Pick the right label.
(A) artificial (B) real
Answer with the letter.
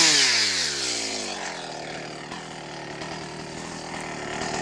B